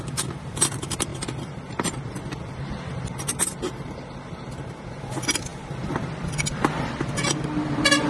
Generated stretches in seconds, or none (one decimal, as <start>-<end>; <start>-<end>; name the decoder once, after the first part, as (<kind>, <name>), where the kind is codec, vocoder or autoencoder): 1.1-2.8 (vocoder, BigVGAN v2); 5.5-7.0